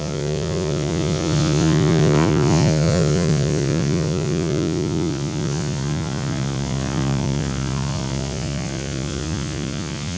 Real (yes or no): no